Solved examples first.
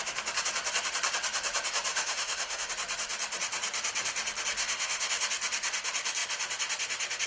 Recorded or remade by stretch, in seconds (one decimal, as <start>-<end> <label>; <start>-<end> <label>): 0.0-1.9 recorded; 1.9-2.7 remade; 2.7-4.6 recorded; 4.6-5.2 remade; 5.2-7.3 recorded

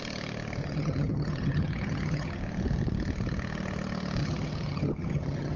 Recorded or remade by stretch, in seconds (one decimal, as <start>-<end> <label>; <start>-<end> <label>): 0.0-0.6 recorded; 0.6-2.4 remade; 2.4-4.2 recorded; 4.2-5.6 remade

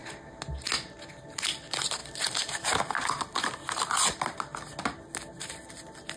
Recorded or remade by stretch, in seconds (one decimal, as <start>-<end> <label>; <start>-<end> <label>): 0.0-6.2 recorded

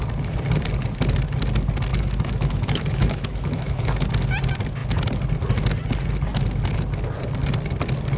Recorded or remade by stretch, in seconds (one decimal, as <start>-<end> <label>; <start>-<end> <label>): 0.0-1.9 recorded; 1.9-4.1 remade; 4.1-8.2 recorded

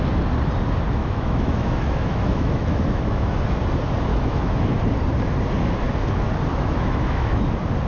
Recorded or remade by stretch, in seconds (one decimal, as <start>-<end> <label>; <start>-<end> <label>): 0.0-1.0 recorded; 1.0-3.3 remade; 3.3-4.1 recorded; 4.1-4.8 remade; 4.8-6.5 recorded; 6.5-7.4 remade; 7.4-7.9 recorded

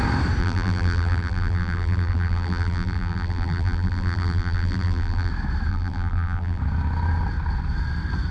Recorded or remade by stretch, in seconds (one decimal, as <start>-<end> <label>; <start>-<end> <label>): 0.0-0.4 recorded; 0.4-5.3 remade; 5.3-5.7 recorded; 5.7-6.6 remade; 6.6-8.3 recorded

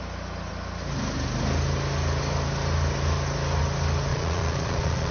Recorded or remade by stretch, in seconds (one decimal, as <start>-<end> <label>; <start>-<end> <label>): 0.0-4.1 recorded; 4.1-5.1 remade

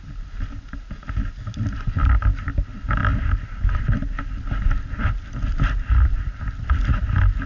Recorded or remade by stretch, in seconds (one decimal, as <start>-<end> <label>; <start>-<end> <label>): 0.0-7.5 recorded